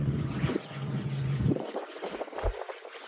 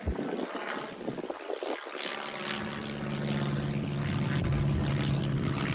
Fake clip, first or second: first